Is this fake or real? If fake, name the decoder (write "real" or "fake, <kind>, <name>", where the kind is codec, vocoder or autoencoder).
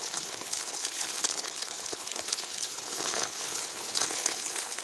fake, codec, HILCodec